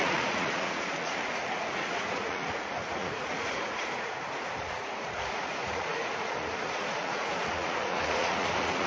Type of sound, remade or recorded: remade